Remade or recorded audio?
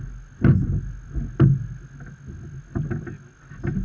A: recorded